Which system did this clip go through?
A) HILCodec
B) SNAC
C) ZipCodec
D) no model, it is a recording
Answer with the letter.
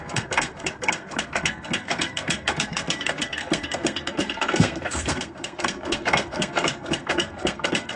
B